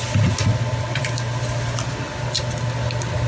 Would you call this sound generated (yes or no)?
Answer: no